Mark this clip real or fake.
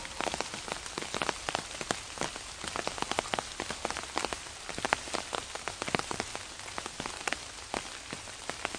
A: real